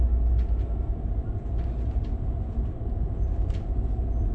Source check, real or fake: real